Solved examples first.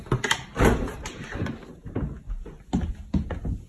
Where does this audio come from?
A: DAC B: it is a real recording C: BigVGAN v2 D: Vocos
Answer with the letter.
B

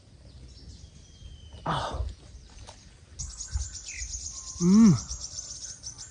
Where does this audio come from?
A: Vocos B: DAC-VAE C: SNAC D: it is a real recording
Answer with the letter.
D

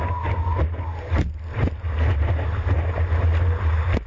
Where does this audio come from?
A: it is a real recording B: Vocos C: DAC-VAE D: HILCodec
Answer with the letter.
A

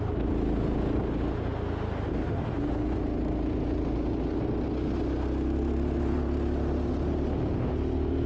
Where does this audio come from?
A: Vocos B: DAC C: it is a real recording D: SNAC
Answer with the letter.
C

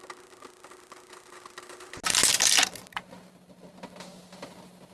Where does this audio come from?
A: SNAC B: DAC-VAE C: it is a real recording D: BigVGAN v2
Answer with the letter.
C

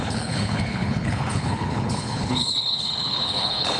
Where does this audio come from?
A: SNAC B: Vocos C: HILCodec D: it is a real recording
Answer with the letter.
C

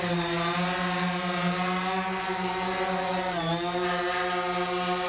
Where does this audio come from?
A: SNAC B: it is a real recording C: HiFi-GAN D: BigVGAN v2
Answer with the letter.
B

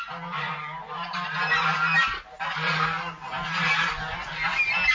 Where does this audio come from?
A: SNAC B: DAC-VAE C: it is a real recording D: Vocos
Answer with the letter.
C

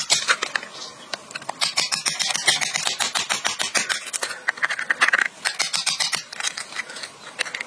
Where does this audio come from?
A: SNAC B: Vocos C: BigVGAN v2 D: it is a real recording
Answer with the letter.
D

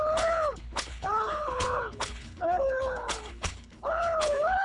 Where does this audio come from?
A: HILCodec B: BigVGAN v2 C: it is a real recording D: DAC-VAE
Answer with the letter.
A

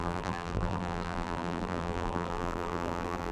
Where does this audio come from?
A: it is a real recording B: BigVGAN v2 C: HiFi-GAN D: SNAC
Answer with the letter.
B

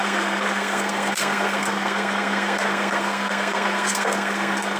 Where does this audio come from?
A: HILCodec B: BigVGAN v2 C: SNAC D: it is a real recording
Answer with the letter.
C